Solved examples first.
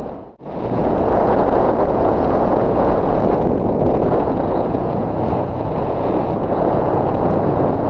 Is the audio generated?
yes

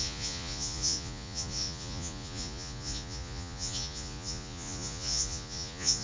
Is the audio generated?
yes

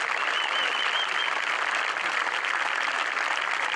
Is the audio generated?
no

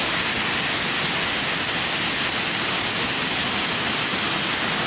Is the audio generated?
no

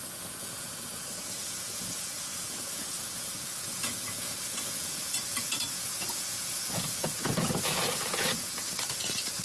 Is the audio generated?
yes